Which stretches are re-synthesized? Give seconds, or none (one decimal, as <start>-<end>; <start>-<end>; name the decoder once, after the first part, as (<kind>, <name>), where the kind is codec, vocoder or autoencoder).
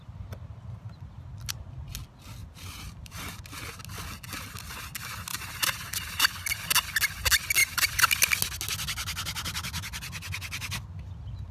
2.4-3.2 (vocoder, BigVGAN v2); 5.3-6.2; 7.6-8.1